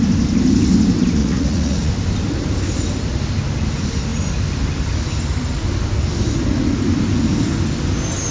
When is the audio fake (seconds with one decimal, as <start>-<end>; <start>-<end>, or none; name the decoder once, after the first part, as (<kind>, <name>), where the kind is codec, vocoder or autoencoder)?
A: 1.2-1.9 (vocoder, Vocos)